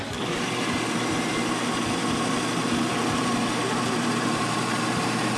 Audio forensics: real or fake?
real